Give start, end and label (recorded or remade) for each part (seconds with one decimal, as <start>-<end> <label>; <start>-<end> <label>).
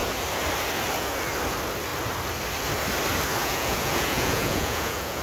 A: 0.0-3.4 recorded; 3.4-5.2 remade